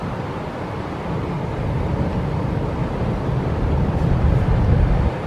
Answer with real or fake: real